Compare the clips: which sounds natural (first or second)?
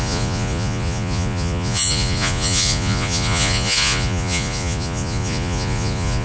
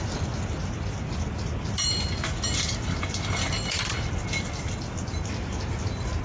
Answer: second